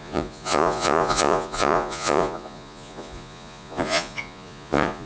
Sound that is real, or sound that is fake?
fake